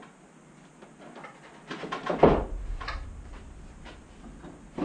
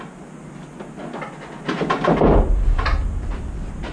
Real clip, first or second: second